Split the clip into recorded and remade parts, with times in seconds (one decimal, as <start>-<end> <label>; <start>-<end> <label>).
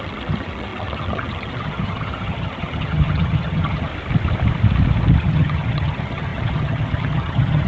0.0-3.9 remade; 3.9-5.2 recorded; 5.2-7.7 remade